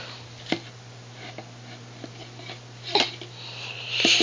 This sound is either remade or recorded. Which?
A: recorded